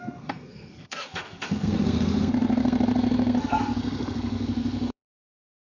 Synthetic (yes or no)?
yes